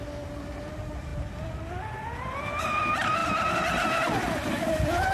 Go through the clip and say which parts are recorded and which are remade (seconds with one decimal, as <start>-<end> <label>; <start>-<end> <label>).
0.0-5.1 recorded